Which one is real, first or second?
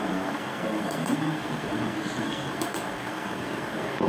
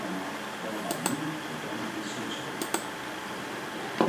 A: second